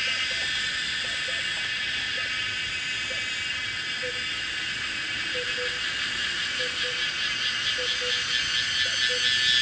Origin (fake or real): real